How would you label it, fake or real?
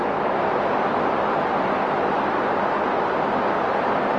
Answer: real